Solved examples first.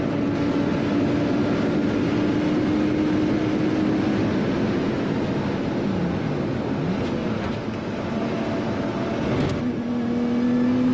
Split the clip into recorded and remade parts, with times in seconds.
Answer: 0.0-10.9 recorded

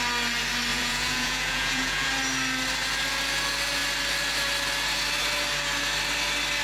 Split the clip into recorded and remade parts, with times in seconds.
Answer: 0.0-0.7 recorded; 0.7-2.1 remade; 2.1-6.6 recorded

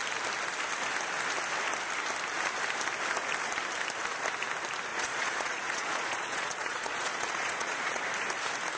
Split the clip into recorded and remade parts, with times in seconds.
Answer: 0.0-4.9 recorded; 4.9-8.0 remade; 8.0-8.8 recorded

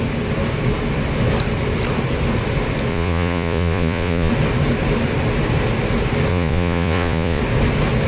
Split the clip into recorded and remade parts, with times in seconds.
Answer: 0.0-2.9 recorded; 2.9-4.3 remade; 4.3-6.3 recorded; 6.3-7.4 remade; 7.4-8.1 recorded

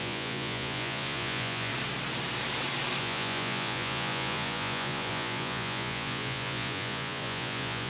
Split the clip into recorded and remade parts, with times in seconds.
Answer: 0.0-1.7 remade; 1.7-3.0 recorded; 3.0-7.9 remade

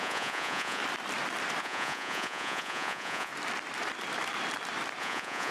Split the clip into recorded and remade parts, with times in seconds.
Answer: 0.0-0.8 remade; 0.8-1.6 recorded; 1.6-3.3 remade; 3.3-5.0 recorded; 5.0-5.5 remade

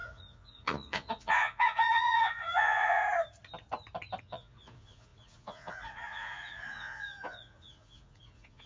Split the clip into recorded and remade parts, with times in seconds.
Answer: 0.0-3.0 remade; 3.0-4.2 recorded; 4.2-8.7 remade

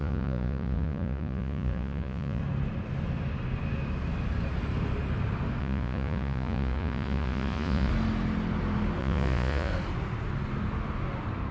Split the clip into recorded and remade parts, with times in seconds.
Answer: 0.0-2.4 remade; 2.4-5.6 recorded; 5.6-7.9 remade; 7.9-9.0 recorded; 9.0-9.7 remade; 9.7-11.5 recorded